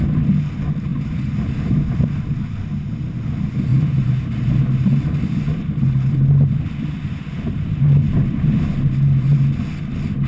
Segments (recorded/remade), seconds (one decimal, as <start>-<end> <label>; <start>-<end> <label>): 0.0-0.9 recorded; 0.9-1.9 remade; 1.9-3.7 recorded; 3.7-6.2 remade; 6.2-7.3 recorded; 7.3-8.1 remade; 8.1-10.3 recorded

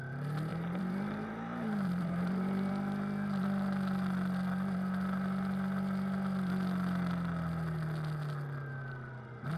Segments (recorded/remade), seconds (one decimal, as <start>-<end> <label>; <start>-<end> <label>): 0.0-0.5 recorded; 0.5-2.7 remade; 2.7-9.6 recorded

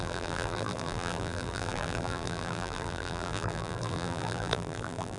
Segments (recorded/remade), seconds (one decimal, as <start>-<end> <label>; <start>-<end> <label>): 0.0-5.2 remade